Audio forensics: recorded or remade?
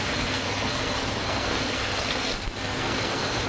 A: remade